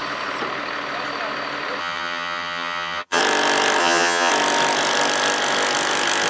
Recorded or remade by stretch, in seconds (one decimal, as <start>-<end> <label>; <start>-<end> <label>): 0.0-1.8 recorded; 1.8-3.2 remade; 3.2-3.8 recorded; 3.8-4.3 remade; 4.3-6.3 recorded